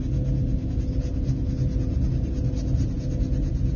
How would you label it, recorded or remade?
recorded